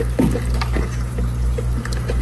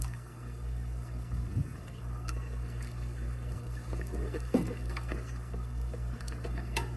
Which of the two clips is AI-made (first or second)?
second